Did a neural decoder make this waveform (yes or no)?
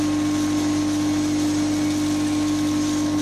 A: no